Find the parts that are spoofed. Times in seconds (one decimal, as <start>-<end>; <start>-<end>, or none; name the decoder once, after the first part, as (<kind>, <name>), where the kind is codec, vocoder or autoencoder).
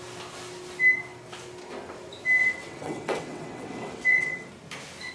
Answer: 2.4-4.5 (vocoder, WaveNeXt)